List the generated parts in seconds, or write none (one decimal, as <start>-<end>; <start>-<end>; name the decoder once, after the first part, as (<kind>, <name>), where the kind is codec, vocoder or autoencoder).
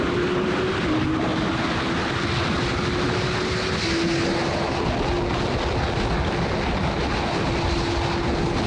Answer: none